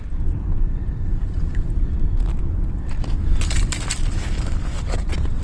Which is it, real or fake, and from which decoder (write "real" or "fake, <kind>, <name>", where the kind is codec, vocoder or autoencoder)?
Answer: real